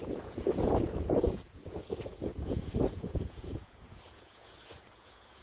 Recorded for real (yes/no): no